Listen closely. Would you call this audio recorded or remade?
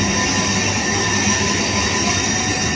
recorded